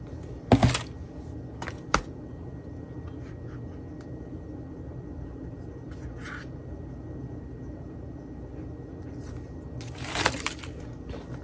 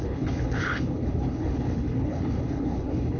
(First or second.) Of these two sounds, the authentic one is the first